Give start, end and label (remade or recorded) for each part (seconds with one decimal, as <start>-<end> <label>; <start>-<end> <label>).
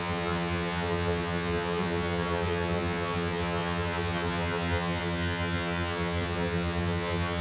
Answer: 0.0-7.4 remade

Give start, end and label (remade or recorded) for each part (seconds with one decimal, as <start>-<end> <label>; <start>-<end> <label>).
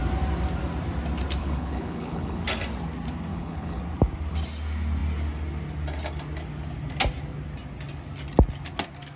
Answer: 0.0-1.4 recorded; 1.4-2.4 remade; 2.4-3.3 recorded; 3.3-3.8 remade; 3.8-9.2 recorded